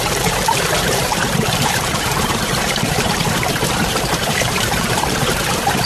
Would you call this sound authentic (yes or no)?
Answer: no